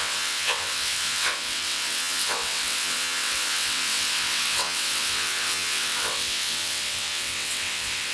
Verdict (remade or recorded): remade